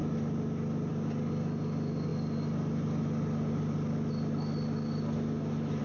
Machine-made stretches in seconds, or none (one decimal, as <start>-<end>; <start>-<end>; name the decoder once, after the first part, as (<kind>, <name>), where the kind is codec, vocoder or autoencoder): none